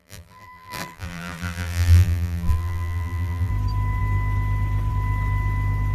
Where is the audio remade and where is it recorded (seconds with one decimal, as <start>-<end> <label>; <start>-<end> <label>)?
0.0-3.5 remade; 3.5-5.9 recorded